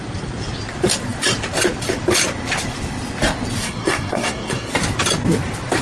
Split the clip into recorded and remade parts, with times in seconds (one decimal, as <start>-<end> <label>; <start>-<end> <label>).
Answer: 0.0-3.6 recorded; 3.6-4.7 remade; 4.7-5.8 recorded